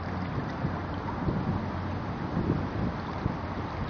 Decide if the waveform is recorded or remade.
recorded